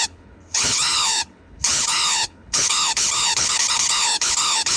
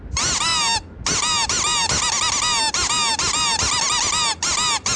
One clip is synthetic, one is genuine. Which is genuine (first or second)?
second